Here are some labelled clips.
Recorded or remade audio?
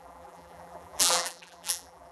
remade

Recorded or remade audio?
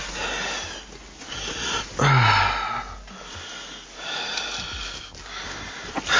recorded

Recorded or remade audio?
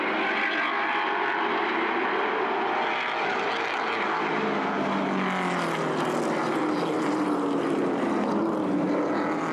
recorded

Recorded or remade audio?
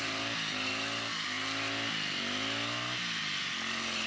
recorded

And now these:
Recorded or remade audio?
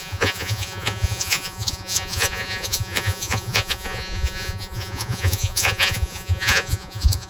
remade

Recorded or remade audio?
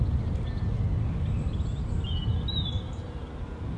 recorded